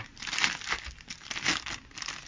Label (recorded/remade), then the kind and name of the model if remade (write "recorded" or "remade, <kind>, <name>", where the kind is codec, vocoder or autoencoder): recorded